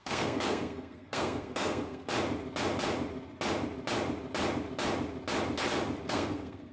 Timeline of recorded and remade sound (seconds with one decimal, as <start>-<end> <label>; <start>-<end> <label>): 0.0-2.1 remade; 2.1-6.1 recorded; 6.1-6.7 remade